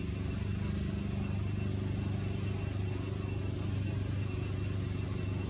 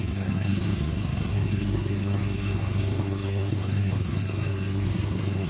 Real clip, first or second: first